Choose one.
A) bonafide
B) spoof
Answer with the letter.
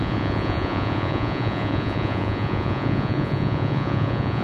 B